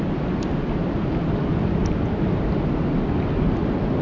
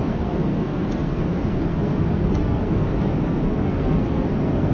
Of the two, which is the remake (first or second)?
second